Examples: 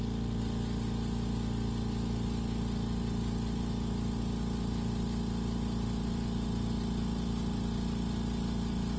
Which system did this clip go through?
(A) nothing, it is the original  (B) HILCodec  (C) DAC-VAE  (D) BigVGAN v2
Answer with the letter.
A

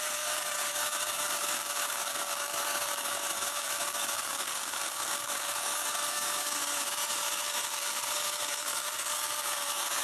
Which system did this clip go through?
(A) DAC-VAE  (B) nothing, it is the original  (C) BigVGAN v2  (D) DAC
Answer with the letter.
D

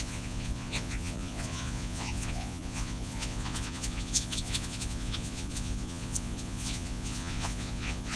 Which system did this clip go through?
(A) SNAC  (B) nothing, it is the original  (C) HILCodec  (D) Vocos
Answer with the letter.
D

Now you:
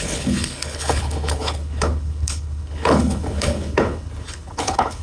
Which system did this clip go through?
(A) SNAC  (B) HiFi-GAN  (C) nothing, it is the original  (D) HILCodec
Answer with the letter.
D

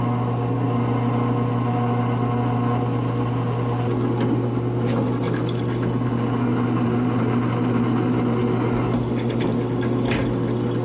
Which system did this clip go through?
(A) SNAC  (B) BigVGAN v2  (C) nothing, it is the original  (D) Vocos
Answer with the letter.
C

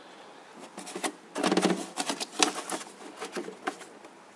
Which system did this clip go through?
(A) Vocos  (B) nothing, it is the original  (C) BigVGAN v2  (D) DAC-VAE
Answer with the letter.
B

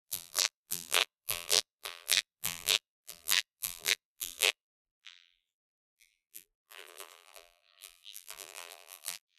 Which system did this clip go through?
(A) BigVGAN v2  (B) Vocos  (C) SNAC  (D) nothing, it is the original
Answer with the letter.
A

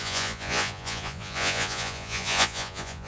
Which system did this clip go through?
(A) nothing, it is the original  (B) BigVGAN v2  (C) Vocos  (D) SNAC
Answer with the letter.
C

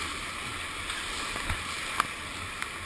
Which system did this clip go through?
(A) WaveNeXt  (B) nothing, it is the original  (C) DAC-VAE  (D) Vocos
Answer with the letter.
B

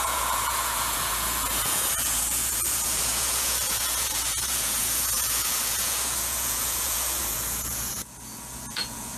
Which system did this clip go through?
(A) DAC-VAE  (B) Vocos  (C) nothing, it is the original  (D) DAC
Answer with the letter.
B